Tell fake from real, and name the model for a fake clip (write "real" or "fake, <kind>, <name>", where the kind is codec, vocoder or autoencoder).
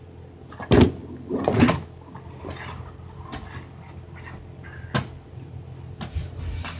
real